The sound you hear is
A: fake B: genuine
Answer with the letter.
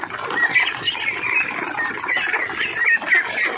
B